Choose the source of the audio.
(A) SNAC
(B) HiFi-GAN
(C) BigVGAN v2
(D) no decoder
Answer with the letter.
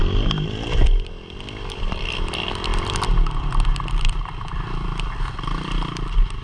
C